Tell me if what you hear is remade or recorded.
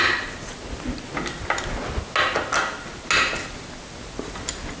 recorded